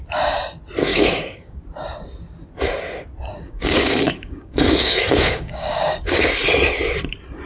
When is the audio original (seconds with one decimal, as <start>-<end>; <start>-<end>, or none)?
0.0-0.9; 1.6-3.3; 6.2-7.5